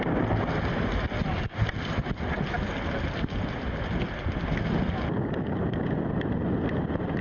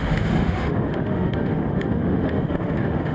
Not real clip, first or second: second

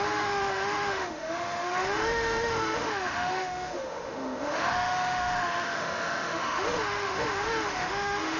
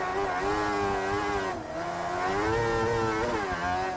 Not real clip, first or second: first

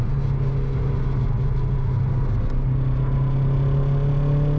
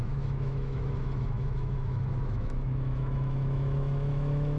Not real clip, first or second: second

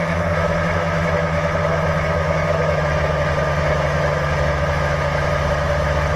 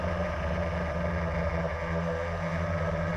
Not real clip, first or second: first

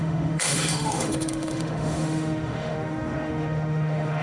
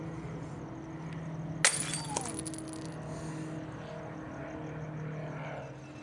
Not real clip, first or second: first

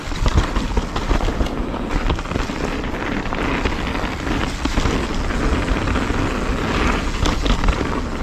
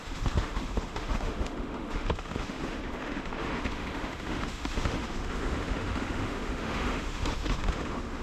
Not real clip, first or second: second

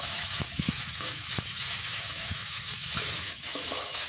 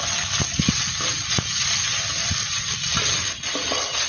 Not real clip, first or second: first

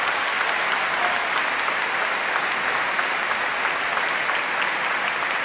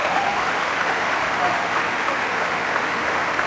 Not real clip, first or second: second